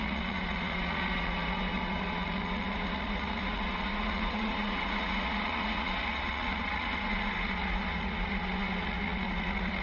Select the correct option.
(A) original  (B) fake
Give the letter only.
B